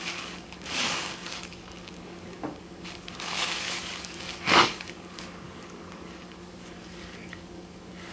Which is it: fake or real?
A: fake